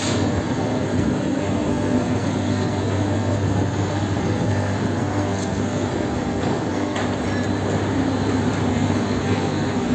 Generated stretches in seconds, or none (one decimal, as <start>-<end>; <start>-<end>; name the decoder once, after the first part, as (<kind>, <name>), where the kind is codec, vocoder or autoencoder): 0.0-7.0 (codec, SNAC); 8.7-9.9